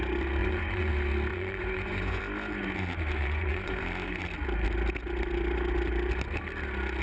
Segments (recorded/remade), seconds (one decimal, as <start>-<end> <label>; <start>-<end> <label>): 0.0-0.4 recorded; 0.4-0.9 remade; 0.9-1.3 recorded; 1.3-2.2 remade; 2.2-3.2 recorded; 3.2-3.8 remade; 3.8-7.0 recorded